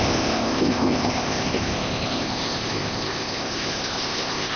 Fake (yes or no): yes